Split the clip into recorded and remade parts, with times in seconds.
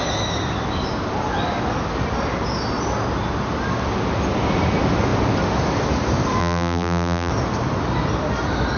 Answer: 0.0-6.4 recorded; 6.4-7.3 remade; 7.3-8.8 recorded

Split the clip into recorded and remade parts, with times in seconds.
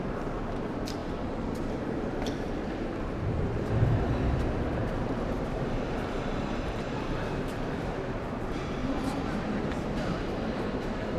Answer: 0.0-11.2 remade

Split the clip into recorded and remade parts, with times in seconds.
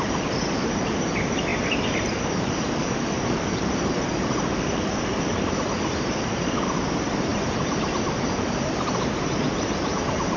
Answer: 0.0-7.3 remade; 7.3-8.3 recorded; 8.3-10.4 remade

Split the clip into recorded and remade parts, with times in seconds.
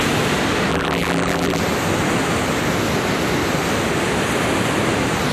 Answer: 0.0-0.7 recorded; 0.7-1.6 remade; 1.6-5.3 recorded